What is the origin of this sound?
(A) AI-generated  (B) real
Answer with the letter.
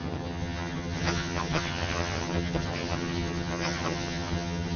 A